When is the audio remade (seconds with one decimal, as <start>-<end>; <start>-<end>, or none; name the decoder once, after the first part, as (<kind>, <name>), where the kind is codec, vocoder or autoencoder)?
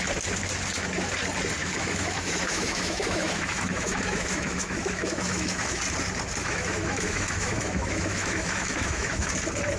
1.6-5.8 (autoencoder, DAC-VAE); 6.4-9.3